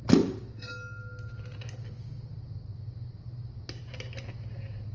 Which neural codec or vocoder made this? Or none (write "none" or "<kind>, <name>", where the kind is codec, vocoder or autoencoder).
none